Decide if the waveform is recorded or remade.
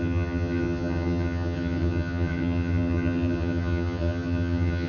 remade